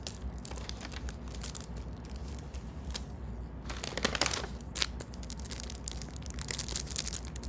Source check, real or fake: real